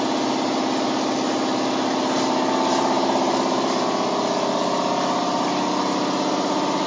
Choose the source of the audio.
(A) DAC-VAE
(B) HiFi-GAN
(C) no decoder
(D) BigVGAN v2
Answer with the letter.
C